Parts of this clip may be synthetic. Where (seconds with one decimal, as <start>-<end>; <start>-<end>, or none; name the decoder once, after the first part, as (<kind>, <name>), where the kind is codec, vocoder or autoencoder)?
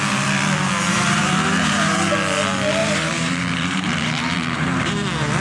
0.9-2.1 (vocoder, BigVGAN v2); 2.8-4.9